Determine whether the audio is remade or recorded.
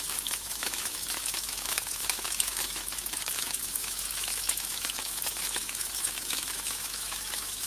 remade